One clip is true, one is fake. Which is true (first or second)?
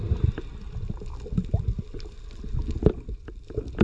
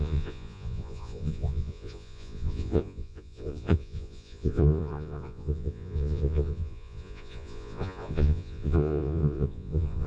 first